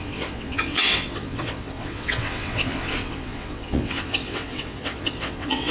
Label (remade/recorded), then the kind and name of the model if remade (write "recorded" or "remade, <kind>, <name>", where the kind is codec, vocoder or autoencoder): remade, vocoder, WaveNeXt